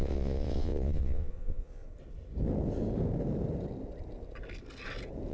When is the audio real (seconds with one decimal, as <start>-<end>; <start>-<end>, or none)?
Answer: 1.8-5.3